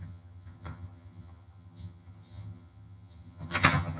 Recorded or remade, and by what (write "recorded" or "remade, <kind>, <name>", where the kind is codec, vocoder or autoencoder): remade, vocoder, HiFi-GAN